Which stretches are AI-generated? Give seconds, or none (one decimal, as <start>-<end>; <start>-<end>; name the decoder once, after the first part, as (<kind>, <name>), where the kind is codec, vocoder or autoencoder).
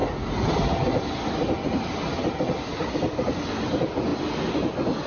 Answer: none